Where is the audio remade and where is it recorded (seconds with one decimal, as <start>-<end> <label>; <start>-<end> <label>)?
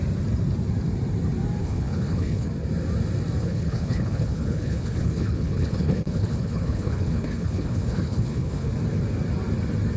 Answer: 0.0-1.6 recorded; 1.6-2.5 remade; 2.5-3.4 recorded; 3.4-8.7 remade; 8.7-10.0 recorded